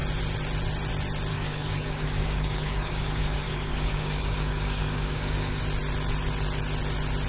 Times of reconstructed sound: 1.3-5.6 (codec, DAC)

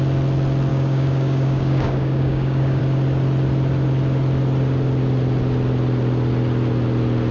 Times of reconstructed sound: 0.7-2.8 (codec, DAC)

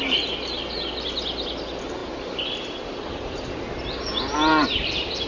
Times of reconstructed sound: none

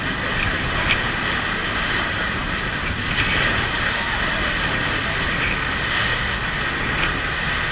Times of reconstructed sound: none

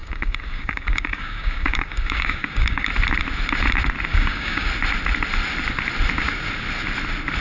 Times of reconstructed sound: 0.0-2.9 (codec, DAC); 4.1-4.7